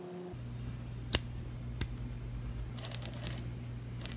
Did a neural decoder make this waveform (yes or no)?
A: no